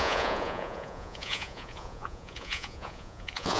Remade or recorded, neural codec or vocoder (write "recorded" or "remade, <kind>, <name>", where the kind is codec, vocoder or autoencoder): remade, vocoder, Vocos